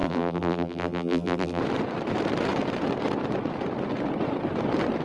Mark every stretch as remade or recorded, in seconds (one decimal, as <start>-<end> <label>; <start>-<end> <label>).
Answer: 0.0-1.6 remade; 1.6-5.0 recorded